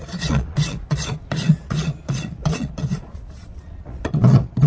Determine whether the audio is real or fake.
fake